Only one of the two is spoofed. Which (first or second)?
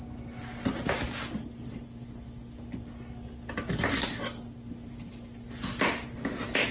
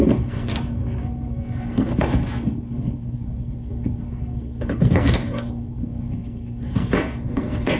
second